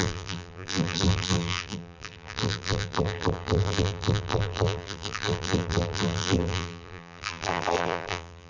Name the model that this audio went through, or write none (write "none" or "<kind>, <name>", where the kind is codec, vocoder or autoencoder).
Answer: vocoder, BigVGAN v2